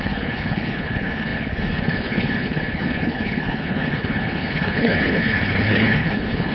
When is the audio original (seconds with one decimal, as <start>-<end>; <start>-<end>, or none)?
none